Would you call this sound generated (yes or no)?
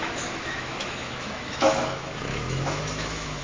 yes